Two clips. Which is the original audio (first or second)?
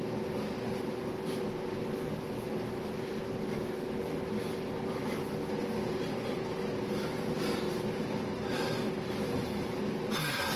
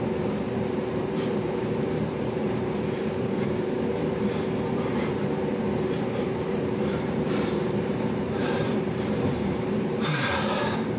first